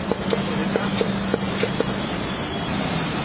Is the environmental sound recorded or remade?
recorded